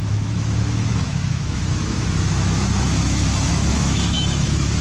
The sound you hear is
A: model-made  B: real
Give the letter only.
A